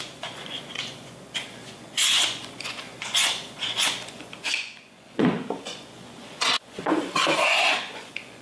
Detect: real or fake fake